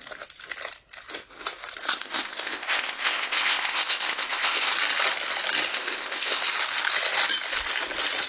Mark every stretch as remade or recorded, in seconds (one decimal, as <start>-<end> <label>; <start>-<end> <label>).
0.0-1.8 recorded; 1.8-4.7 remade; 4.7-5.7 recorded; 5.7-6.4 remade; 6.4-8.3 recorded